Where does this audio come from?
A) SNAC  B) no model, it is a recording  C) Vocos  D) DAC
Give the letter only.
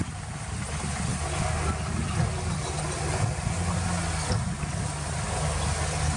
B